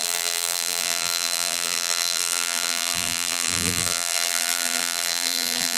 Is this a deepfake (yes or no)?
yes